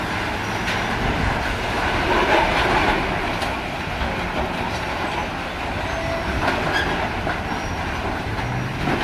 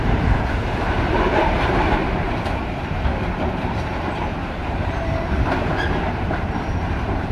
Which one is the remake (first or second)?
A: second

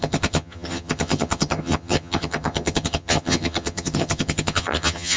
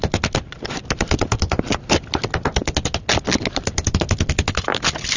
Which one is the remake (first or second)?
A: first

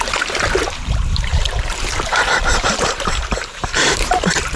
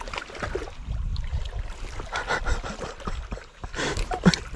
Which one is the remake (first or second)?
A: first